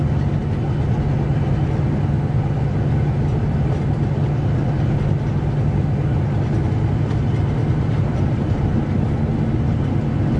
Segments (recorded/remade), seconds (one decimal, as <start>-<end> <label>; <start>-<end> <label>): 0.0-7.6 recorded; 7.6-8.5 remade; 8.5-10.4 recorded

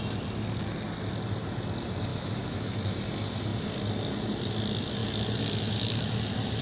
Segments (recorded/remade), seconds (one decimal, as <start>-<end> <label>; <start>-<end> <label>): 0.0-2.1 recorded; 2.1-3.0 remade; 3.0-6.6 recorded